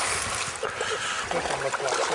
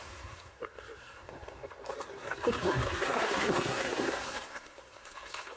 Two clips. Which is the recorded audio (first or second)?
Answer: first